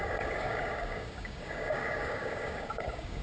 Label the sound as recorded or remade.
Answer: remade